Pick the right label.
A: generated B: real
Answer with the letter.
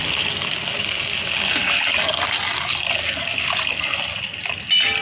B